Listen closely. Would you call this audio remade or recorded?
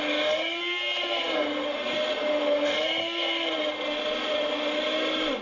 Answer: recorded